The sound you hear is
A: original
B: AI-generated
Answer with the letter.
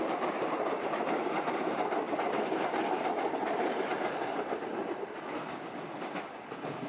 A